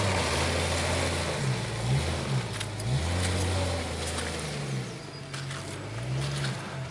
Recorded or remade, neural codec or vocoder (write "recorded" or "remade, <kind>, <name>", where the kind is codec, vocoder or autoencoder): recorded